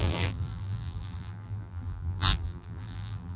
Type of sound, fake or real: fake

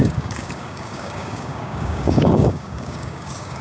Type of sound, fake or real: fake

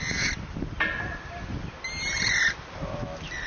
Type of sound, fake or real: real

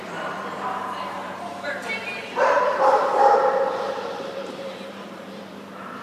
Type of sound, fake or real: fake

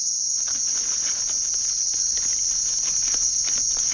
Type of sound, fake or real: real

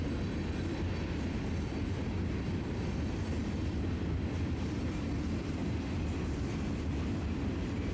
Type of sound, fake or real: real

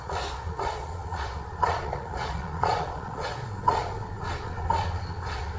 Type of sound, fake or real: fake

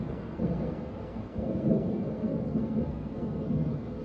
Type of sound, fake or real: fake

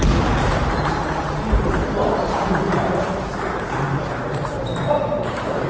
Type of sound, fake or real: fake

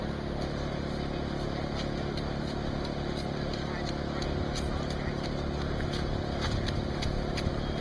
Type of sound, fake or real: real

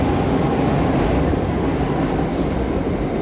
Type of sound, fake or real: real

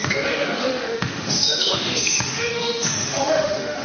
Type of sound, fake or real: fake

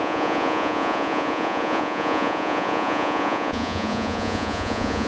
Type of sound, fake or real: fake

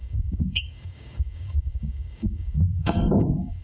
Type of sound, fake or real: fake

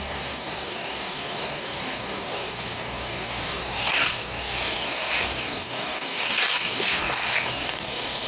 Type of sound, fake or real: fake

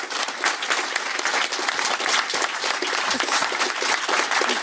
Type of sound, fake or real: real